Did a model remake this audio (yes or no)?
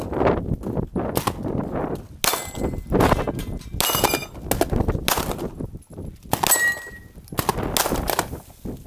no